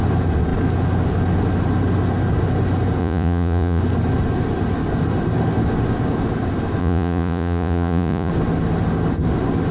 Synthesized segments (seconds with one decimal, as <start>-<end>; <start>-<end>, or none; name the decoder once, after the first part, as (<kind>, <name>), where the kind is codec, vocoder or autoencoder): 3.0-3.8 (vocoder, Vocos); 6.8-8.3